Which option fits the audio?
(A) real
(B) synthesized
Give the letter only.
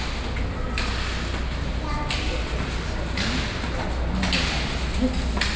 A